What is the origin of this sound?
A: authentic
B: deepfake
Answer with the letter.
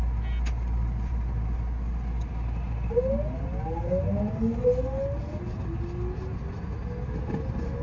A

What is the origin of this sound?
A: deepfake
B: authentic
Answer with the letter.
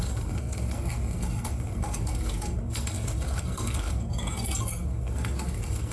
A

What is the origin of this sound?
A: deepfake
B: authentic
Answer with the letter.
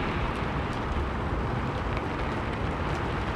B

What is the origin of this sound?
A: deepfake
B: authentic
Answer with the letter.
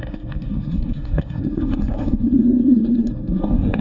A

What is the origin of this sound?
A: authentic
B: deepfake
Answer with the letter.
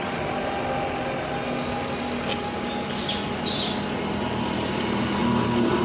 A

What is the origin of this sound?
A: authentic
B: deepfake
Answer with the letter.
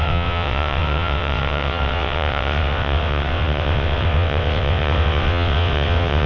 B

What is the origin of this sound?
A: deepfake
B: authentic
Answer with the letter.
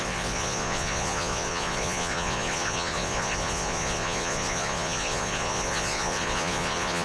A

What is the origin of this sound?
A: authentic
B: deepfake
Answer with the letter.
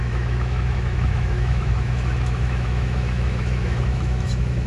B